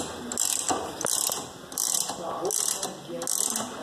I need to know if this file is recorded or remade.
recorded